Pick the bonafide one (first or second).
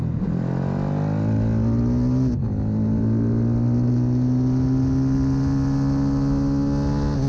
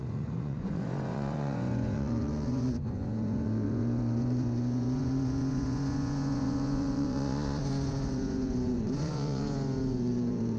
first